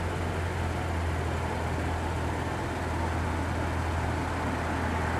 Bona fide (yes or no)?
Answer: yes